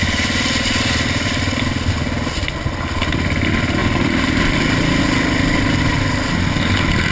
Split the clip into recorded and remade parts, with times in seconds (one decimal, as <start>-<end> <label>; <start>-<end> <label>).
0.0-7.1 recorded